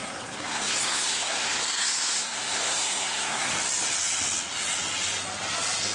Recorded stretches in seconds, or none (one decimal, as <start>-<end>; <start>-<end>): 3.5-5.9